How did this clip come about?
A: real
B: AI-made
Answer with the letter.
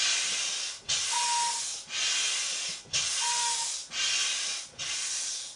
A